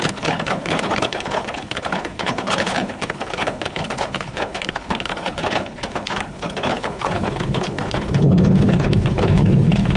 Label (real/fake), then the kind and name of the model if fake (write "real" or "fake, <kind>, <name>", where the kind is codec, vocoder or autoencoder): fake, codec, HILCodec